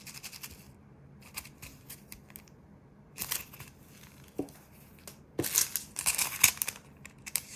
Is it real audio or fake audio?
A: real